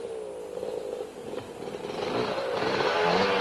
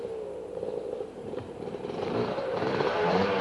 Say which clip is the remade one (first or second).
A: second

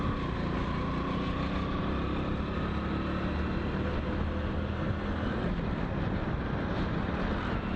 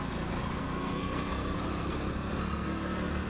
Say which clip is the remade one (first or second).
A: second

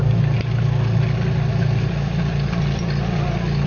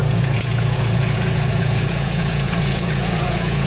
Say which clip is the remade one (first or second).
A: second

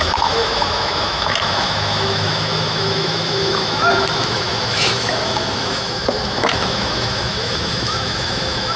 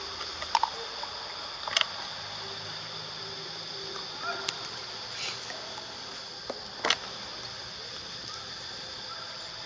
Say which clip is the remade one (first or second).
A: first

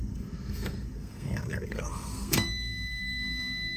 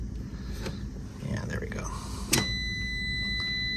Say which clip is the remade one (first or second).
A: first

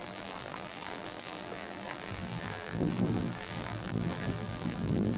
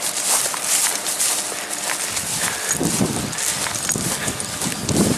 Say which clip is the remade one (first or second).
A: first